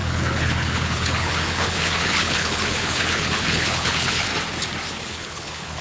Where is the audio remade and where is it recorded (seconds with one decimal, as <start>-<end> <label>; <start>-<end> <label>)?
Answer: 0.0-4.3 remade; 4.3-4.9 recorded; 4.9-5.8 remade